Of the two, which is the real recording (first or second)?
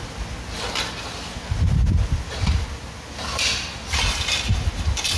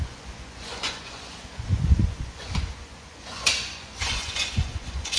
first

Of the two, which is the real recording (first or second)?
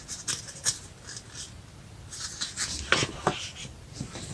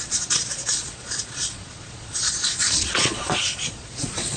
first